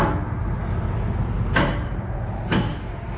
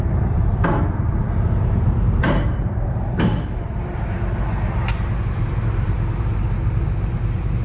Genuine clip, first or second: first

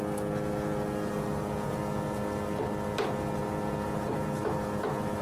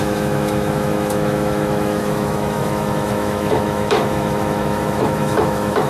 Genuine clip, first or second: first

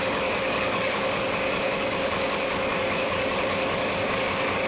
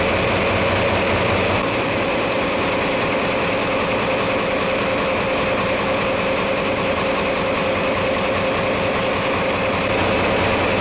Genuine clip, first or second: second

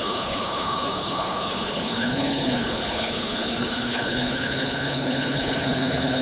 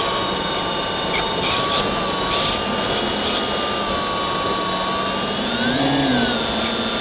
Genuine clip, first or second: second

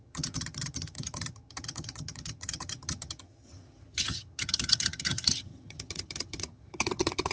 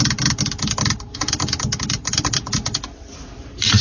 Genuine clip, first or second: second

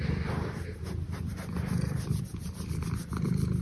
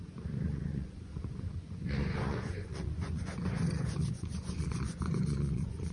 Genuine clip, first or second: first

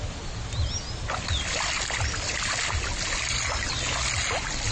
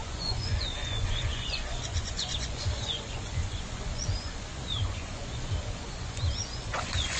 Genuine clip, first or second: first